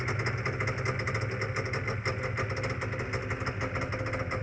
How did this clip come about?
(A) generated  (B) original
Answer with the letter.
B